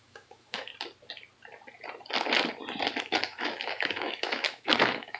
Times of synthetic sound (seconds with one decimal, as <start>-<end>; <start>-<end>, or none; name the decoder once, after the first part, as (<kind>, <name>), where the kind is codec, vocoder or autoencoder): 0.0-0.7 (autoencoder, DAC-VAE); 3.0-5.2